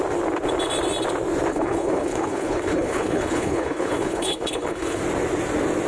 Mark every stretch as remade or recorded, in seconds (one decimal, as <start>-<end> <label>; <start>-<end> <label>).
0.0-1.5 recorded; 1.5-5.0 remade; 5.0-5.9 recorded